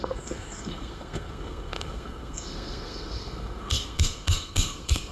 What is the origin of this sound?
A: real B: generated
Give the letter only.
B